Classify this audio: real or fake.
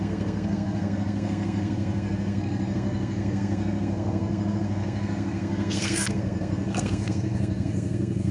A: fake